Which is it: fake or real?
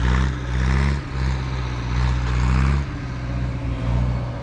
real